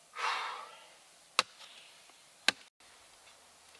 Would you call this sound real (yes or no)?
yes